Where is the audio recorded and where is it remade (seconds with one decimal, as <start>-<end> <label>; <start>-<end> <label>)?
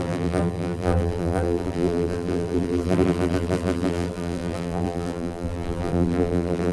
0.0-6.7 remade